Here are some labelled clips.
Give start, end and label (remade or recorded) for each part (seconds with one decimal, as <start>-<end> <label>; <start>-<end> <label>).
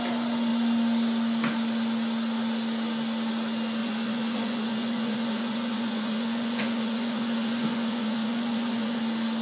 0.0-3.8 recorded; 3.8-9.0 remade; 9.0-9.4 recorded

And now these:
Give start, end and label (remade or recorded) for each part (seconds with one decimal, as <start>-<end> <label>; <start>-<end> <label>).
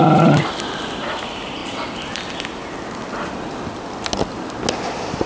0.0-5.3 recorded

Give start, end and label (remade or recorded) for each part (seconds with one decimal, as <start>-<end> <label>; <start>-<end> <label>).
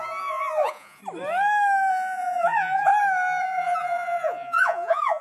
0.0-1.0 remade; 1.0-1.9 recorded; 1.9-2.9 remade; 2.9-3.4 recorded; 3.4-5.2 remade